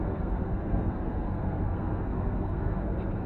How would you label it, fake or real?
fake